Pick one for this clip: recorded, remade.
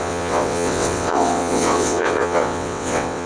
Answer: remade